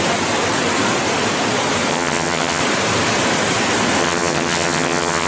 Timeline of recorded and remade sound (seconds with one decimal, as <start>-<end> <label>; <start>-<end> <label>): 0.0-1.9 recorded; 1.9-2.6 remade; 2.6-4.0 recorded; 4.0-5.3 remade